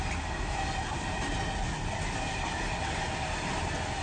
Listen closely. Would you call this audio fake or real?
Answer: real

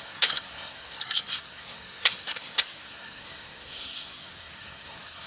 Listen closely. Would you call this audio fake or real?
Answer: fake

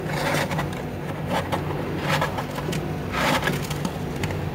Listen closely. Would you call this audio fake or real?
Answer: real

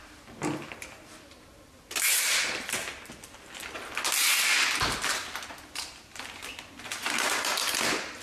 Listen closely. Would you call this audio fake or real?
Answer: real